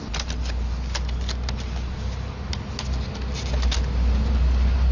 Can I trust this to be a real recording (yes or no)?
yes